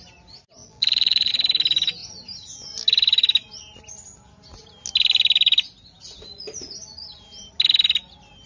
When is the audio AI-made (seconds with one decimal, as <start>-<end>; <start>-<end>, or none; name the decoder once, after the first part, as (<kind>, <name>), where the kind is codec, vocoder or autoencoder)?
0.6-1.3 (vocoder, BigVGAN v2)